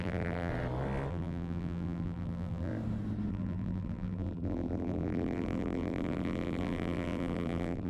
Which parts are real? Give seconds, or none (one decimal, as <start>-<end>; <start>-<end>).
0.5-1.1; 2.7-3.3